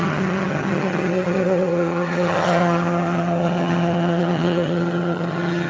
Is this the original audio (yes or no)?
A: no